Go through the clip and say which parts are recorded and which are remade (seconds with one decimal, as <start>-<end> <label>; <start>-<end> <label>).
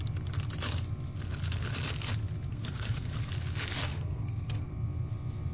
0.0-2.5 recorded; 2.5-3.3 remade; 3.3-3.9 recorded; 3.9-4.7 remade; 4.7-5.5 recorded